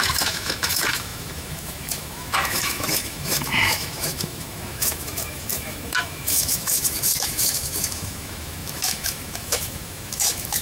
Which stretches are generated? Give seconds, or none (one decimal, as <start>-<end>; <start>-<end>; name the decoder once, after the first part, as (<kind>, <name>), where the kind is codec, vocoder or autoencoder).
0.0-10.6 (autoencoder, DAC-VAE)

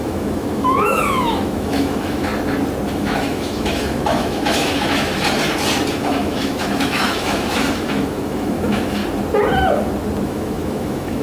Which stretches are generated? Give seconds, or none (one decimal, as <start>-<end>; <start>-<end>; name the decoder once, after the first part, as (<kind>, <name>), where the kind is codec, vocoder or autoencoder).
0.0-2.3 (autoencoder, DAC-VAE); 2.9-5.1; 5.9-9.0; 10.2-11.2

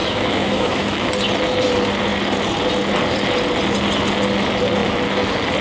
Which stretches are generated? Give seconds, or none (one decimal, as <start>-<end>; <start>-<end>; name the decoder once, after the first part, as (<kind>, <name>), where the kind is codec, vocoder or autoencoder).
0.0-1.1 (autoencoder, DAC-VAE)

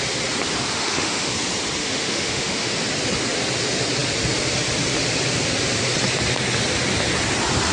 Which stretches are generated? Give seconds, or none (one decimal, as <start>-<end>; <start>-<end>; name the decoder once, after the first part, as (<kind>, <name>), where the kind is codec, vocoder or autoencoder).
0.7-1.3 (autoencoder, DAC-VAE); 1.8-2.7